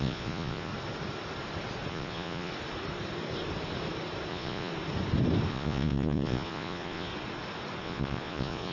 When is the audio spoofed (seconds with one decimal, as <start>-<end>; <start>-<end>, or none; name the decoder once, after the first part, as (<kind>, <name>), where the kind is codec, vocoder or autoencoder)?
0.0-0.7 (vocoder, Vocos); 1.9-2.5; 4.3-4.7; 5.5-7.1; 7.8-8.7